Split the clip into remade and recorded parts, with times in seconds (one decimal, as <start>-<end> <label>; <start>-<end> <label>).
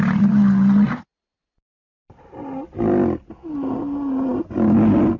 0.0-5.2 recorded